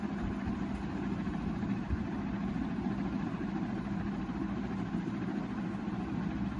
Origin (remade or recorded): recorded